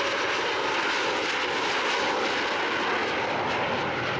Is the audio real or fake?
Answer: real